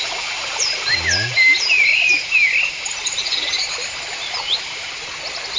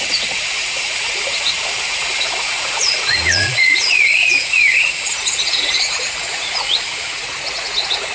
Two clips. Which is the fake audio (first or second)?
second